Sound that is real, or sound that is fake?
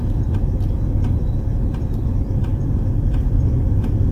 fake